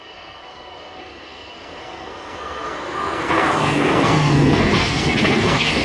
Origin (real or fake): fake